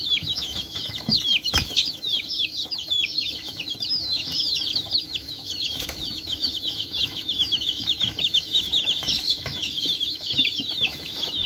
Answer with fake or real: fake